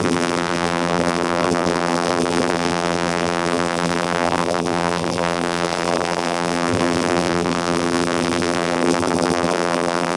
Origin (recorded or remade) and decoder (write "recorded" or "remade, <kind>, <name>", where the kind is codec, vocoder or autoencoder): remade, vocoder, BigVGAN v2